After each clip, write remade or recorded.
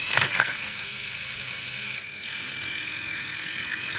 remade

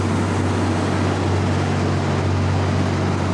recorded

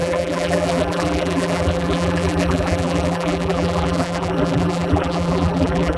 remade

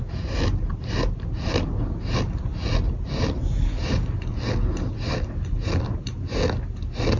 recorded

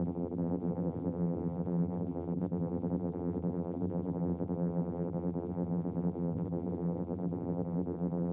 remade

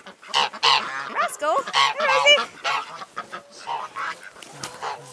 recorded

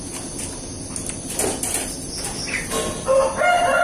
recorded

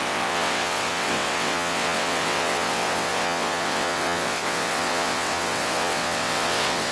remade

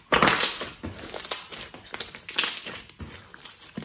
recorded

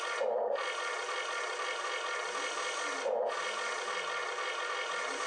recorded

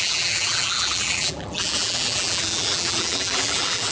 remade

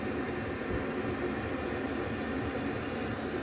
recorded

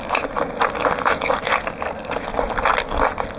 recorded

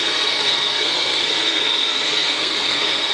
remade